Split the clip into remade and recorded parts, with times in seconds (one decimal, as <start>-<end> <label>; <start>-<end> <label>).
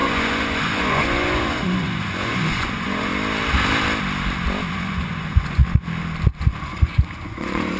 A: 0.0-3.1 remade; 3.1-4.7 recorded; 4.7-5.6 remade; 5.6-6.6 recorded; 6.6-7.8 remade